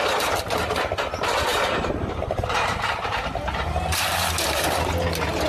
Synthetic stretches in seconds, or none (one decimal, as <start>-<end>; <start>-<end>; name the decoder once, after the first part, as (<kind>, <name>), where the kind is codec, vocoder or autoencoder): 1.5-4.8 (vocoder, BigVGAN v2)